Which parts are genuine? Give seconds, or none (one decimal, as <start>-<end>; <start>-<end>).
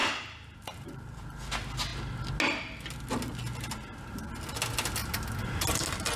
1.2-6.2